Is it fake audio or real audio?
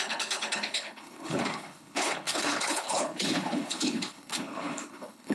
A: fake